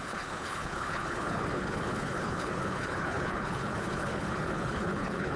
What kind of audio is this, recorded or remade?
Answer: remade